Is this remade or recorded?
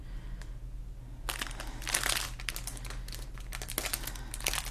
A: recorded